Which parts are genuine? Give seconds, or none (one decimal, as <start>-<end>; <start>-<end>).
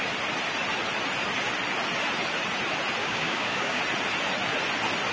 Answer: 0.0-3.0; 3.8-5.1